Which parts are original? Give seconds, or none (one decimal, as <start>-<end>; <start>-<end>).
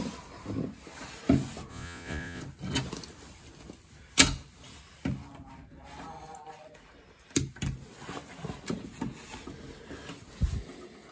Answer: 0.0-1.7; 2.4-11.1